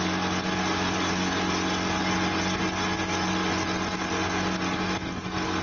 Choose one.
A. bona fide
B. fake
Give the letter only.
A